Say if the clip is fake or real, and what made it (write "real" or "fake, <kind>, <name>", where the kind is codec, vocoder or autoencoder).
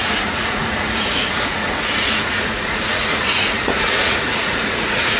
fake, vocoder, Vocos